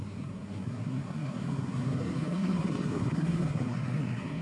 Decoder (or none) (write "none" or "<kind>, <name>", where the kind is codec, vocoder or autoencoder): codec, SNAC